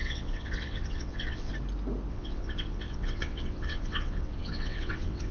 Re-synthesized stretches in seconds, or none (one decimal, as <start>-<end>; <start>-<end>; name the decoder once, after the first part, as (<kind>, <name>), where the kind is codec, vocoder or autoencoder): 0.0-1.5 (vocoder, WaveNeXt); 2.1-5.3